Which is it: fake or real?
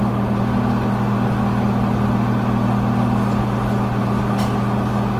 real